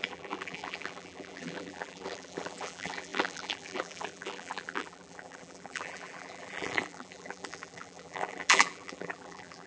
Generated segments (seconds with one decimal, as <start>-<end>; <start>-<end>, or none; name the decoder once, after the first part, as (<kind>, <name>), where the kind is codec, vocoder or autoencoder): 0.0-9.7 (vocoder, BigVGAN v2)